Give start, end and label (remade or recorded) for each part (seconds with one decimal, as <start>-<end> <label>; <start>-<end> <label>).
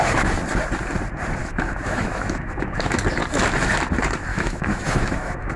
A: 0.0-1.4 recorded; 1.4-3.0 remade; 3.0-4.3 recorded; 4.3-5.6 remade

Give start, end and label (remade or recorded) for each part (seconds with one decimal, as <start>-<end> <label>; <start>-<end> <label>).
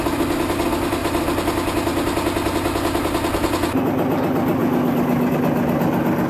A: 0.0-6.3 recorded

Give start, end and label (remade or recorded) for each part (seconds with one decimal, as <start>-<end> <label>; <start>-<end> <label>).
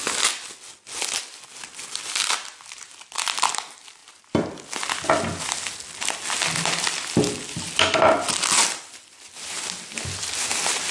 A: 0.0-10.9 recorded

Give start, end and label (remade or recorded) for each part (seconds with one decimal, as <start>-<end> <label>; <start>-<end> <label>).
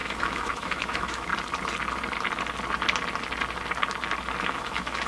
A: 0.0-1.3 remade; 1.3-4.4 recorded; 4.4-5.1 remade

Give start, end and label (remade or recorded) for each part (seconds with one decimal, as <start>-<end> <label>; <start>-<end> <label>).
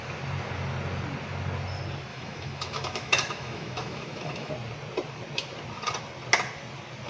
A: 0.0-2.1 recorded; 2.1-4.5 remade; 4.5-7.1 recorded